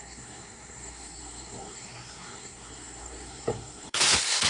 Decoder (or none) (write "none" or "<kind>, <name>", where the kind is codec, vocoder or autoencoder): codec, SNAC